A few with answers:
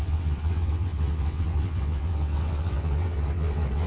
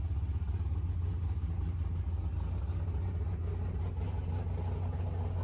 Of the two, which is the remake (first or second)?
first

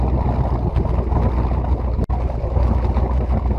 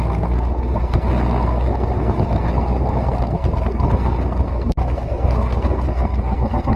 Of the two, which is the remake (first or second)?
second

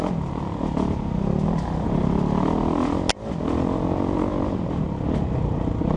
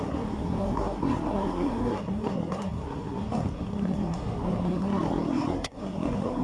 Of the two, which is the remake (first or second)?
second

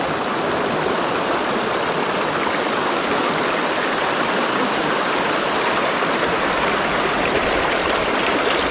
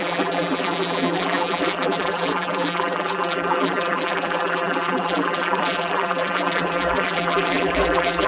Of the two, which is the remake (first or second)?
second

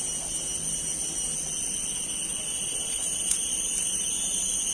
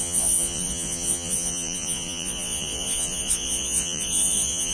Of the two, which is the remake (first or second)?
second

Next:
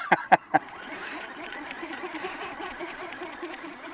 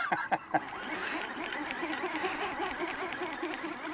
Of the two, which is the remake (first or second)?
first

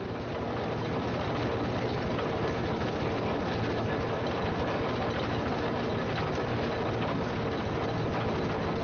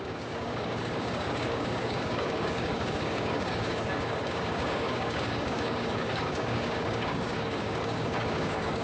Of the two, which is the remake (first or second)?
second